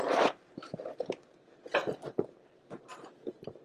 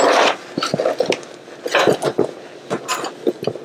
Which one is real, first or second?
second